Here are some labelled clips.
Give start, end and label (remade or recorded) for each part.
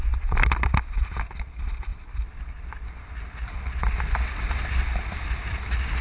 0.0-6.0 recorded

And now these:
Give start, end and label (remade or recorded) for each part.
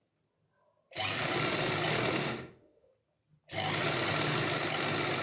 0.0-2.2 recorded; 2.2-2.9 remade; 2.9-5.2 recorded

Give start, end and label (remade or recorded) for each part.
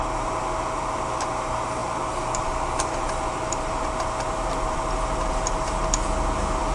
0.0-1.8 recorded; 1.8-5.6 remade; 5.6-6.7 recorded